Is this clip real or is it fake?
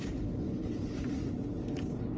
real